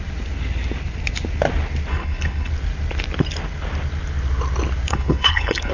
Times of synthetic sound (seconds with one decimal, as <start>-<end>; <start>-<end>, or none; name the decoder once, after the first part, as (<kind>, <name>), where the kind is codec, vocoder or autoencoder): 1.9-2.5 (codec, HILCodec); 4.9-5.7